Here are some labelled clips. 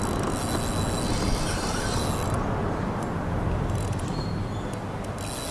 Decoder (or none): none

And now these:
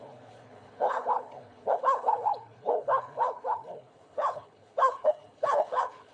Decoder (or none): codec, HILCodec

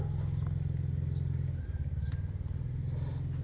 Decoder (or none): none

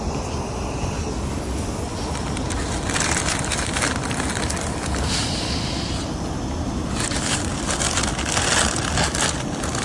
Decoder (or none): none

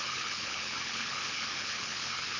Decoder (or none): codec, HILCodec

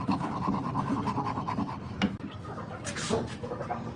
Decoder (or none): none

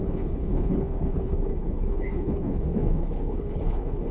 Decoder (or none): codec, HILCodec